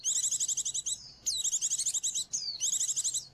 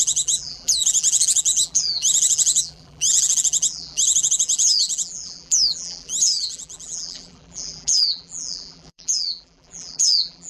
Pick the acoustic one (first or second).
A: first